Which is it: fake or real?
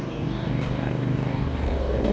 fake